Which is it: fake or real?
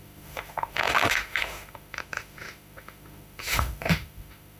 fake